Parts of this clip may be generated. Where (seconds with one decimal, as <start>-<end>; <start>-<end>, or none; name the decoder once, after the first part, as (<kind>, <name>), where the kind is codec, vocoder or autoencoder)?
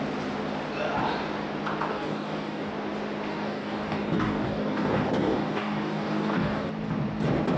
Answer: 1.9-2.7 (codec, DAC); 3.3-6.7